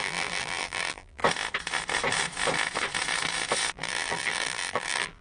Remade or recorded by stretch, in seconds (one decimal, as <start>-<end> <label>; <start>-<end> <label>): 0.0-1.2 remade; 1.2-3.7 recorded; 3.7-5.2 remade